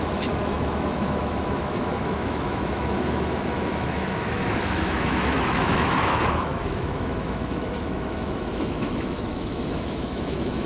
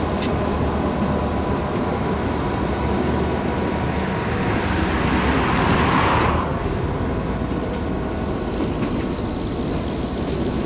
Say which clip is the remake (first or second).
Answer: first